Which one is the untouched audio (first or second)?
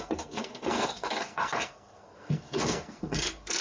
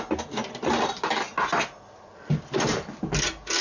second